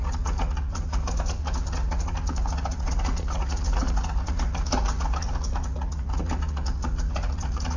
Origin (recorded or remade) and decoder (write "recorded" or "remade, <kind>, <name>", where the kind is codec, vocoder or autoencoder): remade, vocoder, Vocos